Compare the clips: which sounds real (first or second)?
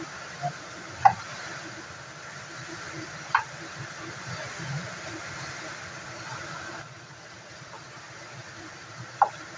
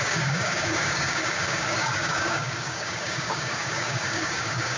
first